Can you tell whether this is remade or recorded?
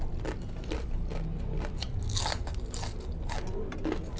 recorded